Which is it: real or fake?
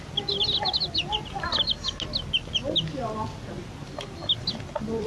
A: real